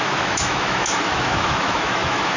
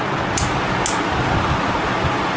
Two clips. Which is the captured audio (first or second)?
second